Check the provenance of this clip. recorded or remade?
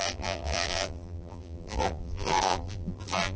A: remade